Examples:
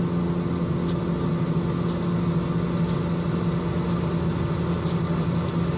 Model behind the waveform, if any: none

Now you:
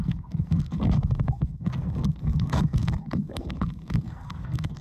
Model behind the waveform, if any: codec, SNAC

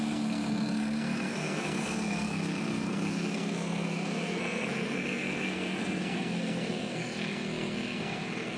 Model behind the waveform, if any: codec, SNAC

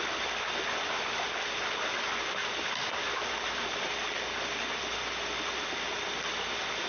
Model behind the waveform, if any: none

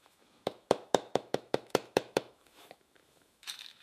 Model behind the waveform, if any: autoencoder, DAC-VAE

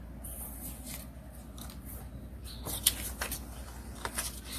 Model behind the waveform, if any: none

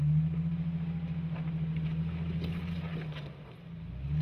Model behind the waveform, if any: none